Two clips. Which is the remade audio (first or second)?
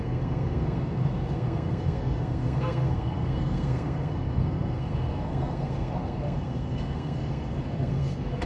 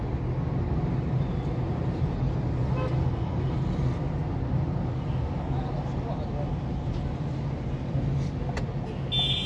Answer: first